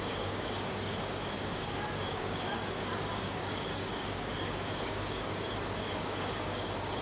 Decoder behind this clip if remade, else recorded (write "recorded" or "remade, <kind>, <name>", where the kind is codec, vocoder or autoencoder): remade, codec, DAC